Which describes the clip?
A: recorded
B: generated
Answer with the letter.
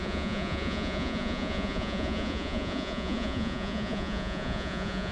B